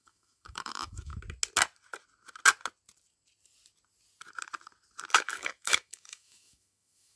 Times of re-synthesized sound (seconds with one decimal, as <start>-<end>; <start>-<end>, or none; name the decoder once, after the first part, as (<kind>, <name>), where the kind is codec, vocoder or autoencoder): 0.0-1.1 (autoencoder, DAC-VAE); 5.1-7.2